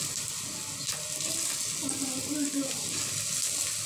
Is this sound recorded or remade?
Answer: recorded